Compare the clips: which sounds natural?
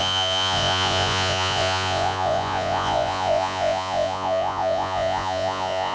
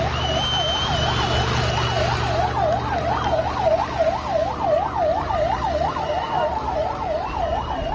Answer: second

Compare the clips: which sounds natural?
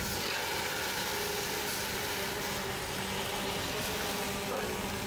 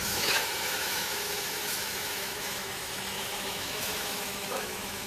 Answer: first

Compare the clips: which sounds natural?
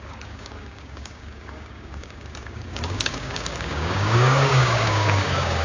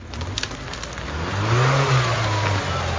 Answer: second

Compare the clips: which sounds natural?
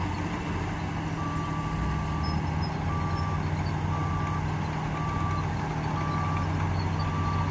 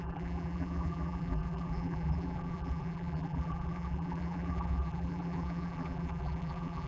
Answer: first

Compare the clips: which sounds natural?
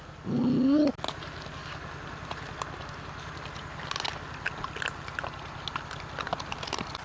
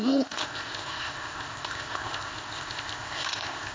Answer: first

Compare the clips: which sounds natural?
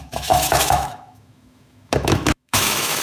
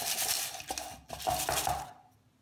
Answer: second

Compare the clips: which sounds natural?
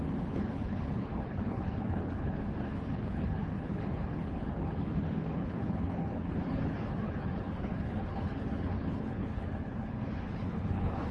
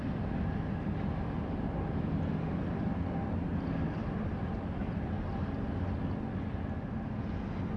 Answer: second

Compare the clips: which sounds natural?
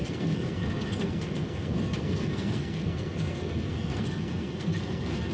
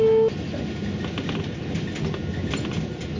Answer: second